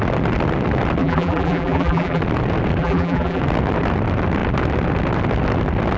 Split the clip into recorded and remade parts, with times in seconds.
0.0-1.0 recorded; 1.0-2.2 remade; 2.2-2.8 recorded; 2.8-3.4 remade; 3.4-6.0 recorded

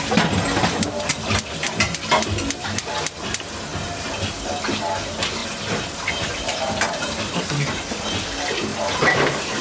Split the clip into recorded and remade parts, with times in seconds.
0.0-3.7 recorded; 3.7-4.2 remade; 4.2-5.4 recorded; 5.4-7.8 remade; 7.8-8.7 recorded; 8.7-9.6 remade